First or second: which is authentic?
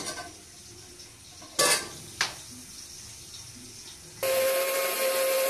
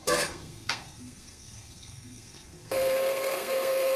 first